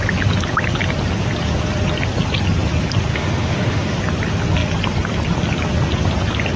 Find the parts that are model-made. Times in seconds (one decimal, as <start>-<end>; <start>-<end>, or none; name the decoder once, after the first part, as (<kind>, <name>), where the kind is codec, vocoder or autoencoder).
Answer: 3.1-4.0 (autoencoder, DAC-VAE)